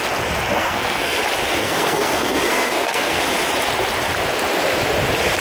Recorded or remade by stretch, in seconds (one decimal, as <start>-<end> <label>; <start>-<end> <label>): 0.0-0.6 recorded; 0.6-1.2 remade; 1.2-1.6 recorded; 1.6-3.2 remade; 3.2-5.4 recorded